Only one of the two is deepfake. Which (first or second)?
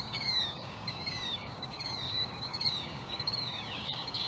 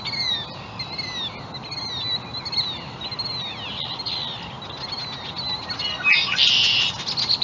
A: first